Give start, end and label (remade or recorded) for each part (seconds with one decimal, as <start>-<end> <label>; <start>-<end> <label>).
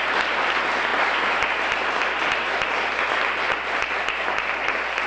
0.0-5.1 recorded